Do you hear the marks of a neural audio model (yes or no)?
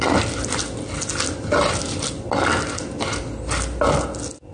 no